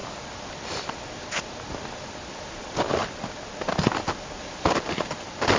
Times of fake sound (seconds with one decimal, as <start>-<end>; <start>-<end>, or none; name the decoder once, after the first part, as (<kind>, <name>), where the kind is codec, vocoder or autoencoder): none